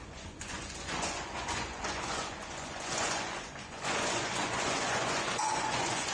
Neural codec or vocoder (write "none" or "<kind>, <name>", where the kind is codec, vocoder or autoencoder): vocoder, Vocos